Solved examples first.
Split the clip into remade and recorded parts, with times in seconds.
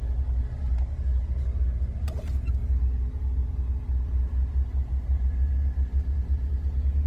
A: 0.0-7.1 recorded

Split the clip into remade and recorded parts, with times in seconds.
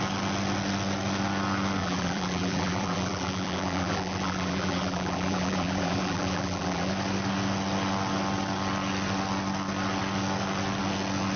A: 0.0-1.8 recorded; 1.8-6.9 remade; 6.9-11.4 recorded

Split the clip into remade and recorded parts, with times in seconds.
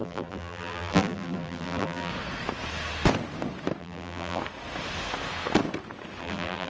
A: 0.0-2.1 remade; 2.1-3.8 recorded; 3.8-4.4 remade; 4.4-6.2 recorded; 6.2-6.7 remade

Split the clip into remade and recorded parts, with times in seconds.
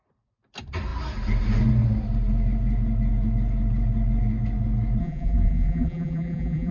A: 0.0-5.0 recorded; 5.0-6.7 remade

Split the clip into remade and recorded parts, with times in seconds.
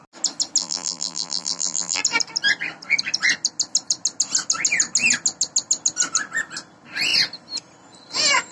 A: 0.0-0.6 recorded; 0.6-2.0 remade; 2.0-8.5 recorded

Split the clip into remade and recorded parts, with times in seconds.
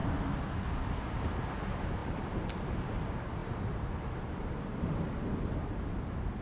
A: 0.0-2.0 recorded; 2.0-2.8 remade; 2.8-3.4 recorded; 3.4-5.0 remade; 5.0-6.4 recorded